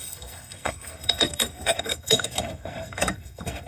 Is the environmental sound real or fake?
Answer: fake